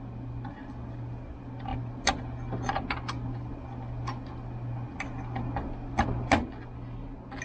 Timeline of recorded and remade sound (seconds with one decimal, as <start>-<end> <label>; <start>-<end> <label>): 0.0-7.4 recorded